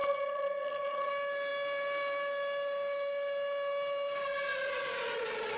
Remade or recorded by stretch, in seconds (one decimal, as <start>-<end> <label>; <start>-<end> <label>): 0.0-1.1 remade; 1.1-5.6 recorded